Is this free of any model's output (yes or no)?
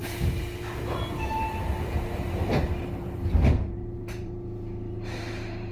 no